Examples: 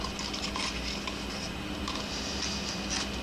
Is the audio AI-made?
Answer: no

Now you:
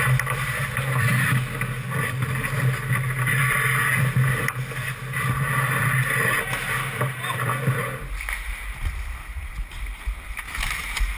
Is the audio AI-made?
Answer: no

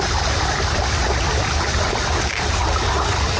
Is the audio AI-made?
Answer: no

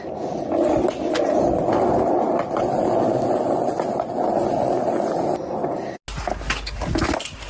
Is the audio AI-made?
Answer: no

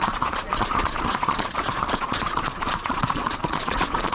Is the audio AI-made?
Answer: yes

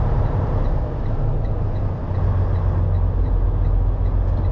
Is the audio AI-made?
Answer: no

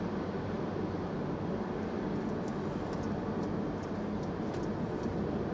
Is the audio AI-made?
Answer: no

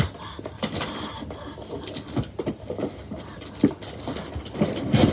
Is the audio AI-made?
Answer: no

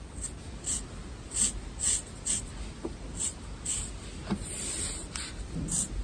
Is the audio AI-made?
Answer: no